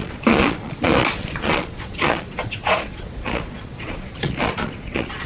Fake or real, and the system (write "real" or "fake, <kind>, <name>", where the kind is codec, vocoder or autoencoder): fake, vocoder, Vocos